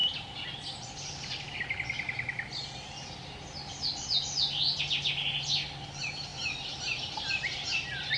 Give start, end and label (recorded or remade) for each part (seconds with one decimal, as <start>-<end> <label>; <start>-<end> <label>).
0.0-8.2 recorded